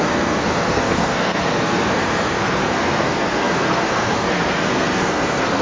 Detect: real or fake fake